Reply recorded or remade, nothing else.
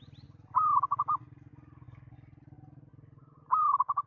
recorded